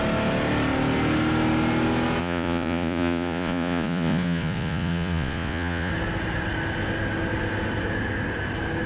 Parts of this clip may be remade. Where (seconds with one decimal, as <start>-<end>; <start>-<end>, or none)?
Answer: 2.2-5.9